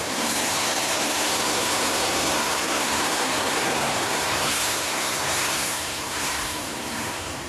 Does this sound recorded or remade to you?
remade